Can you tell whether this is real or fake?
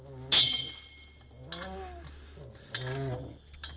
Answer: real